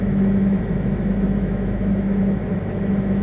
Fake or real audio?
fake